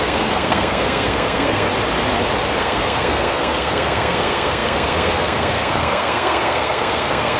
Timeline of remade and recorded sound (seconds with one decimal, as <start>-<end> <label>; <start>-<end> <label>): 0.0-1.7 remade; 1.7-2.6 recorded; 2.6-7.4 remade